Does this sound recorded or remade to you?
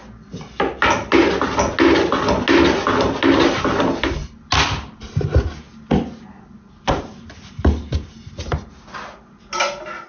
recorded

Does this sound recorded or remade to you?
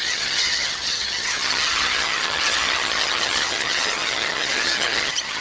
remade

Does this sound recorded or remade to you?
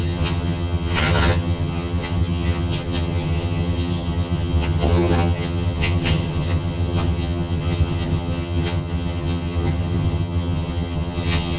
remade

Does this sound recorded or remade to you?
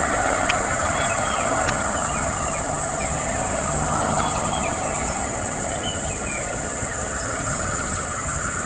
remade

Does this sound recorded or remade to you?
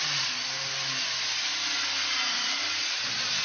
recorded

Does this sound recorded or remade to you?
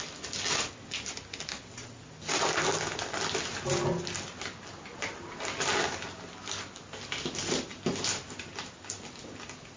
recorded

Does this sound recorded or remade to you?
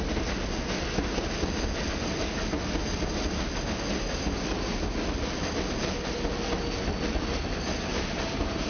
recorded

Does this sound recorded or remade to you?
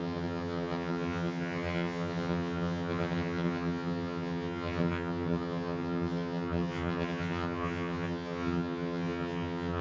remade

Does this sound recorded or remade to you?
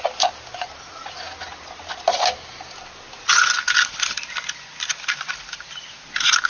recorded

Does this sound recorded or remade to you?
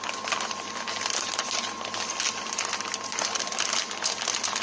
recorded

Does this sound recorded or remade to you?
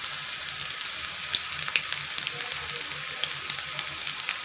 recorded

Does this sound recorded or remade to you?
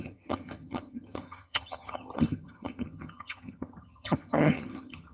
remade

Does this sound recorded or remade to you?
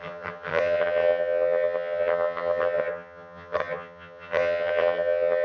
remade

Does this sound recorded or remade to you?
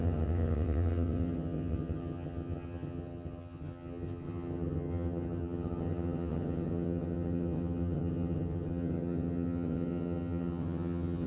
remade